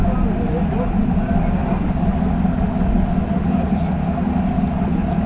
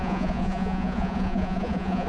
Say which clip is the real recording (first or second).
first